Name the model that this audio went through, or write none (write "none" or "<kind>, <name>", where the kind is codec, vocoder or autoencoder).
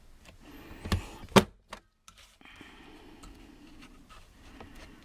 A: none